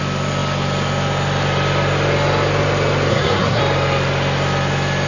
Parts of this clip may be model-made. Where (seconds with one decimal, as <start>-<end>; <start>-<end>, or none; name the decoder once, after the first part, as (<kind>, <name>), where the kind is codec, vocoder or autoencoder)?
3.1-3.6 (codec, SNAC)